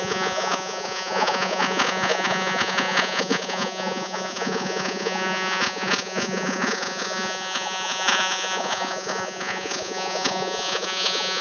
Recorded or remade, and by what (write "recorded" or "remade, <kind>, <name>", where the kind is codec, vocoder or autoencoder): remade, vocoder, Vocos